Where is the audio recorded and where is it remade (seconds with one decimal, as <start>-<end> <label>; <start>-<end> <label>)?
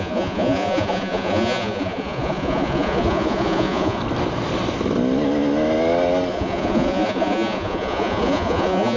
0.0-4.0 remade; 4.0-6.3 recorded; 6.3-9.0 remade